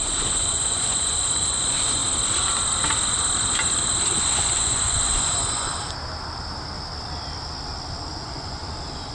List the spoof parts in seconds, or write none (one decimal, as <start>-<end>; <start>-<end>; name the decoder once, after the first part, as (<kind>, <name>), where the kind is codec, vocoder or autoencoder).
0.0-2.0 (vocoder, Vocos); 4.1-5.7; 8.1-8.6